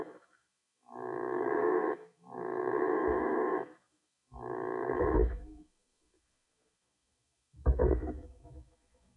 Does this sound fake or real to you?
fake